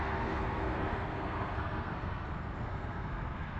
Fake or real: fake